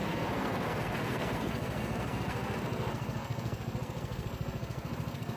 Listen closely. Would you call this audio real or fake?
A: fake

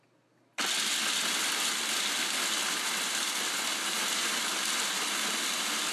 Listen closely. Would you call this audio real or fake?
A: real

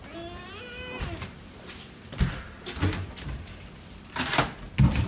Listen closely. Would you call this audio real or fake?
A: real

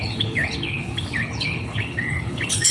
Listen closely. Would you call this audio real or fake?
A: fake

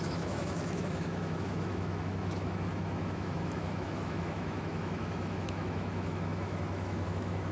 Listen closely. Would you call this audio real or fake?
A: fake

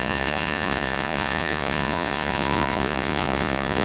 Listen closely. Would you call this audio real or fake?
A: fake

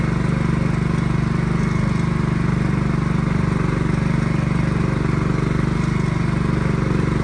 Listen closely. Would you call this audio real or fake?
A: real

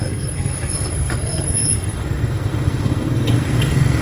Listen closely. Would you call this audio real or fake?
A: fake